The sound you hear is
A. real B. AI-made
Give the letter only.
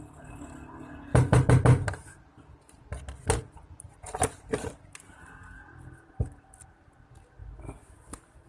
A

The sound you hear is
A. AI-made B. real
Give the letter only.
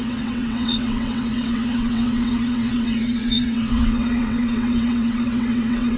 A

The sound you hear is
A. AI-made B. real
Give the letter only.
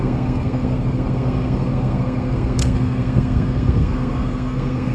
A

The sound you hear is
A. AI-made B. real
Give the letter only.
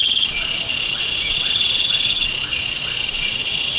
A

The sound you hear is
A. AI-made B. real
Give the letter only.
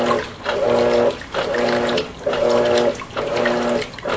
B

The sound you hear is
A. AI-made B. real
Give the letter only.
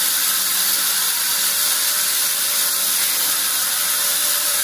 B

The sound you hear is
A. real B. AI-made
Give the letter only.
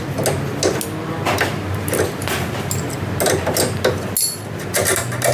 A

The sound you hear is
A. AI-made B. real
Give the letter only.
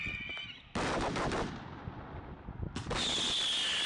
B